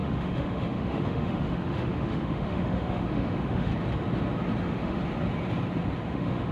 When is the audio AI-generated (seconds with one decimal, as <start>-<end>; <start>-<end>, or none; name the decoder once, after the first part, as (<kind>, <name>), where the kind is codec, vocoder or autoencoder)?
0.0-3.7 (autoencoder, DAC-VAE); 4.6-5.0; 6.1-6.5